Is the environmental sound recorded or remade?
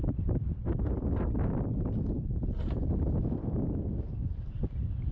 recorded